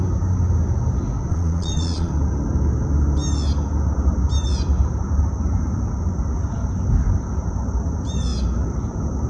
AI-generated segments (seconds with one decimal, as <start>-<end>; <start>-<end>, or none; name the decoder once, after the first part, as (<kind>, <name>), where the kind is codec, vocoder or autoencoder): 1.3-2.1 (vocoder, Vocos)